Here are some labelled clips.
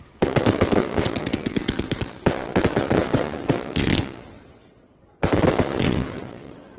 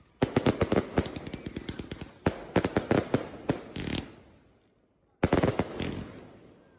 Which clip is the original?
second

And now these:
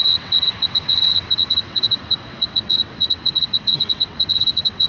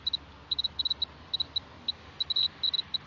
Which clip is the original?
second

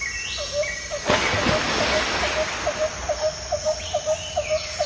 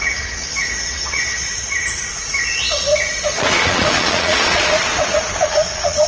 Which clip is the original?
first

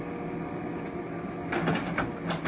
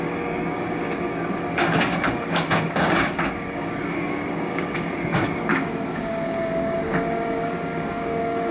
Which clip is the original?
first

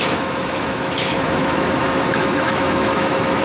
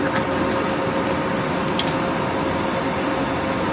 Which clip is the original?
second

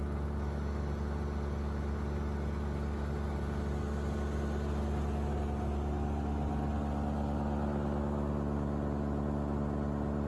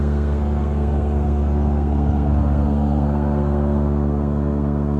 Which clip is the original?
first